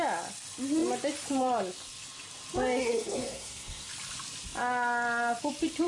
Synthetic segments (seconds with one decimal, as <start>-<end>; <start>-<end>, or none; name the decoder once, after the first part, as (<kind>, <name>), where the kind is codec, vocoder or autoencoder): 2.8-3.9 (codec, SNAC)